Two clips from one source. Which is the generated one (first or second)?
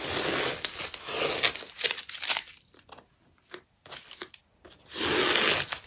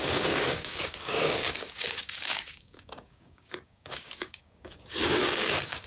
second